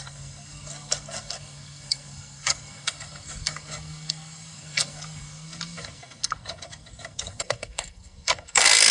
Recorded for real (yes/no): no